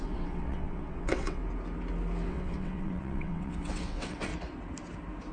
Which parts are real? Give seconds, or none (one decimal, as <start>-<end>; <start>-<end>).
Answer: 1.4-2.3; 4.3-5.3